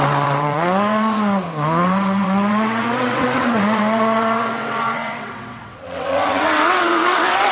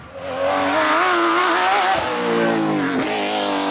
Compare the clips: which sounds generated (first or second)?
first